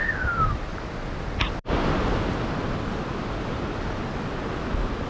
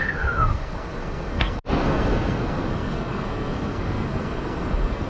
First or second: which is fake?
second